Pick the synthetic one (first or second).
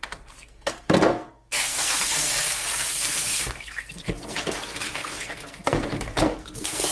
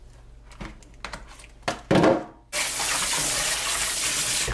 first